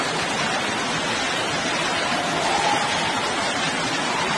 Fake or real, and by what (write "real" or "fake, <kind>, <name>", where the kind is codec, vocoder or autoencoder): real